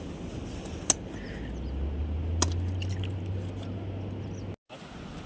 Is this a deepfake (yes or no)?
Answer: no